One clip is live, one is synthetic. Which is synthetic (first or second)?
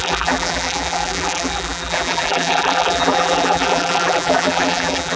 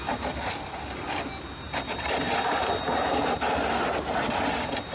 first